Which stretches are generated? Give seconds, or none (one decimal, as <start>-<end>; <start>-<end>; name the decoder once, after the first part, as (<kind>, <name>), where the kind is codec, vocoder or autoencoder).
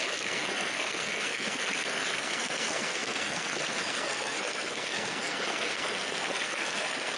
0.0-7.2 (codec, SNAC)